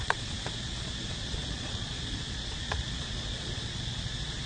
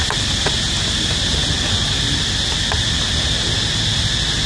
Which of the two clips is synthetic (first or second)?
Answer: first